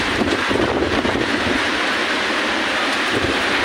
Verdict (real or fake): fake